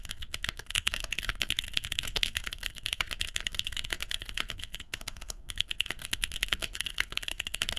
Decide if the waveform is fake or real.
fake